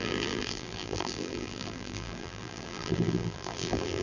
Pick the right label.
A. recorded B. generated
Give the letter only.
B